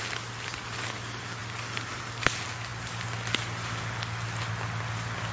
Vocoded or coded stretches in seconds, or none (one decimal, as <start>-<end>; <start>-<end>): none